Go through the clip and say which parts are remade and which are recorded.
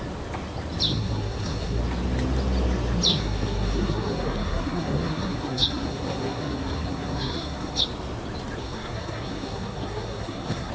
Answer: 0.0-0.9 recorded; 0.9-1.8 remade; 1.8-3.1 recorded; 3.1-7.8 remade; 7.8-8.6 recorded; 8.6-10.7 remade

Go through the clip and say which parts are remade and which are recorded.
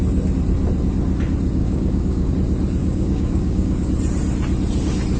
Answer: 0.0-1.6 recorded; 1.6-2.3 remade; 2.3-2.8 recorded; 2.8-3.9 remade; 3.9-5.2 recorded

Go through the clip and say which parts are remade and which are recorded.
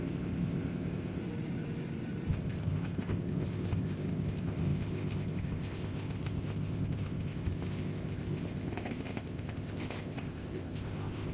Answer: 0.0-1.2 remade; 1.2-2.3 recorded; 2.3-11.3 remade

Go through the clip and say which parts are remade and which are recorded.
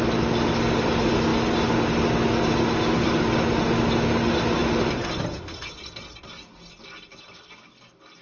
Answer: 0.0-8.2 recorded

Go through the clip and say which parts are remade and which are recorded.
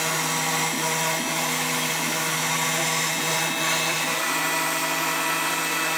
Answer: 0.0-1.3 recorded; 1.3-2.4 remade; 2.4-6.0 recorded